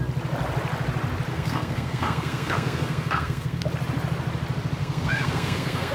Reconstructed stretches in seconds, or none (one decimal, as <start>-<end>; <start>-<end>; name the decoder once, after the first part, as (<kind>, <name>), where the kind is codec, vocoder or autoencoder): 1.3-3.6 (codec, SNAC); 4.8-5.9

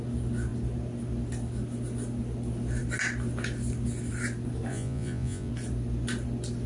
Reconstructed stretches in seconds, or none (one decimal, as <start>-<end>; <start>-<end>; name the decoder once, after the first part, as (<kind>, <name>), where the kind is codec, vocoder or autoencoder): 4.7-5.5 (vocoder, Vocos)

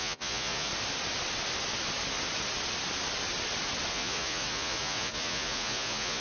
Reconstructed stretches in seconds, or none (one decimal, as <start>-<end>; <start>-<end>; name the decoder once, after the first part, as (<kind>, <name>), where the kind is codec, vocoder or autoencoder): 0.0-0.7 (vocoder, Vocos); 3.9-6.2

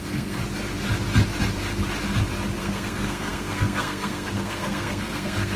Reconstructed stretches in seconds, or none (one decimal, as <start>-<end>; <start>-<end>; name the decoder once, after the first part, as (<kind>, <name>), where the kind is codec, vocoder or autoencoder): 0.0-0.4 (codec, SNAC); 2.6-5.6

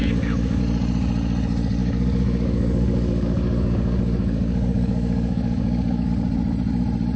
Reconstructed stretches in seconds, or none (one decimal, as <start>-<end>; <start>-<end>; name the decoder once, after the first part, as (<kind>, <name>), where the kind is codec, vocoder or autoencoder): 0.0-0.6 (codec, DAC); 1.8-6.1

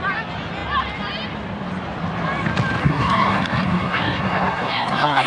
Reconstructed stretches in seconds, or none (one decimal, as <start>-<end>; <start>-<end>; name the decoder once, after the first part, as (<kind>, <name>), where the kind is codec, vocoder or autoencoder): 2.8-5.3 (codec, SNAC)

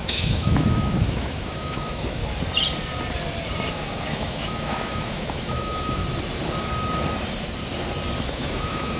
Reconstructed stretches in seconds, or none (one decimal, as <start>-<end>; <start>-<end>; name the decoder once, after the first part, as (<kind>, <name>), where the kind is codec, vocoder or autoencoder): 0.0-2.2 (autoencoder, DAC-VAE); 3.7-6.0; 8.3-9.0

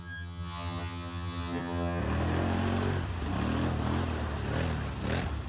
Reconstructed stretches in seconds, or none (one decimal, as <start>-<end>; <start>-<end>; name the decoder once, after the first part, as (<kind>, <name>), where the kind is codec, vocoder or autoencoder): 0.0-2.0 (vocoder, HiFi-GAN)